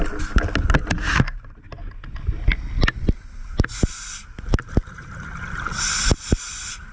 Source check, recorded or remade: recorded